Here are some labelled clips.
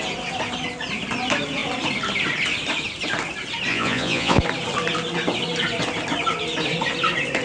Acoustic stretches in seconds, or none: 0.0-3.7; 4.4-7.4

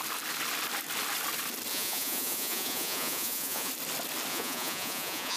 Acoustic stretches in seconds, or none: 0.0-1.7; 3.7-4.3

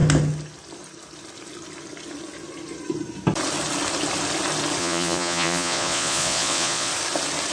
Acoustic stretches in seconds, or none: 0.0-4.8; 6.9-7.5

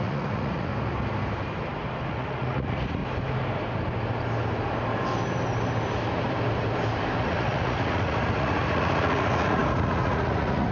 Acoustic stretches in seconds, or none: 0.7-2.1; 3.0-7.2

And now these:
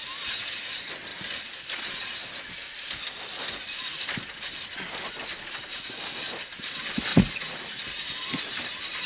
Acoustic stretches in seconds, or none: 0.0-7.1; 7.8-9.1

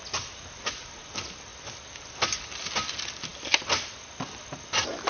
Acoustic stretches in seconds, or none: 0.0-5.1

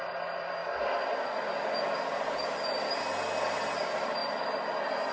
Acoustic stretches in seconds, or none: 0.0-5.1

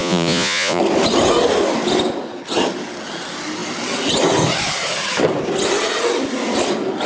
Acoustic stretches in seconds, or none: 0.8-7.1